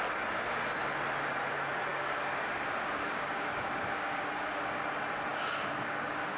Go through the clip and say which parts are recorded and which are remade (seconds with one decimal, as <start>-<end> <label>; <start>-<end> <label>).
0.0-1.9 recorded; 1.9-4.8 remade; 4.8-5.3 recorded; 5.3-6.4 remade